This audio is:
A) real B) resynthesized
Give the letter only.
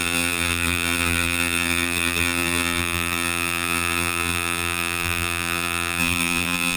B